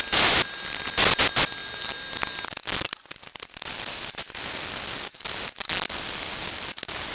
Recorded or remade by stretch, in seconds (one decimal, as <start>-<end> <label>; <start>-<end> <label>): 0.0-7.1 recorded